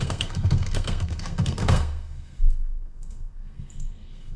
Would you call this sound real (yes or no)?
no